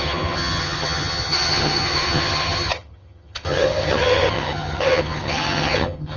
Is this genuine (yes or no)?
no